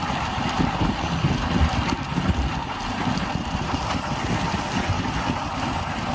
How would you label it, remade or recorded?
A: recorded